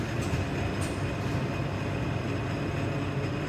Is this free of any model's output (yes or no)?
yes